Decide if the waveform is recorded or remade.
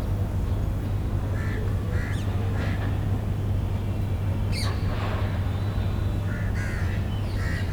recorded